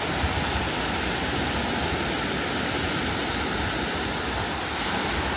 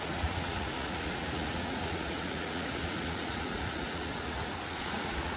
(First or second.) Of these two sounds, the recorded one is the first